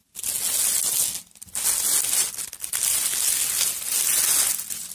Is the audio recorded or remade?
recorded